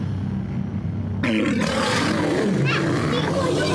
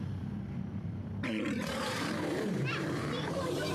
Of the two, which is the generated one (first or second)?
second